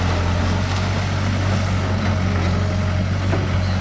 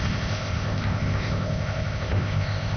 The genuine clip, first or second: first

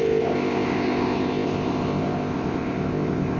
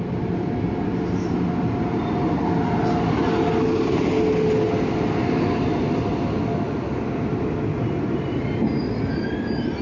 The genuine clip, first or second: second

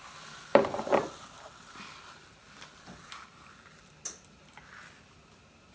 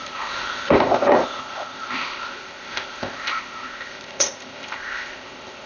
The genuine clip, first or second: first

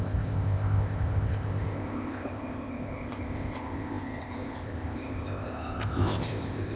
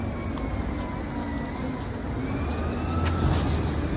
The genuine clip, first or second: second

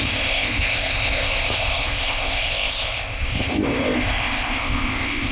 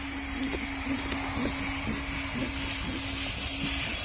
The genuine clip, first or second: second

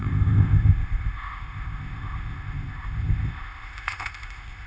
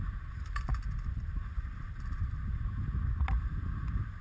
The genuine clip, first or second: second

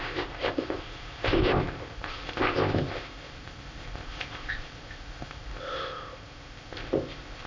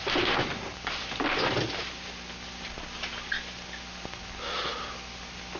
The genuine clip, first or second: second